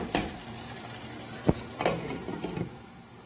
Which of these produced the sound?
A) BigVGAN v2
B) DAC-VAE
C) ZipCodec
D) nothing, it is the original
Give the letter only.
A